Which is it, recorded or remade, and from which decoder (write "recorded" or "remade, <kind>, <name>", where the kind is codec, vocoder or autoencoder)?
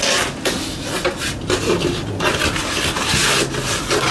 recorded